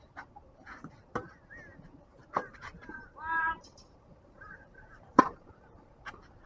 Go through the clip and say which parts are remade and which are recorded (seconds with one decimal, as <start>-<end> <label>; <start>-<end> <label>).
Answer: 0.0-2.1 recorded; 2.1-6.0 remade; 6.0-6.5 recorded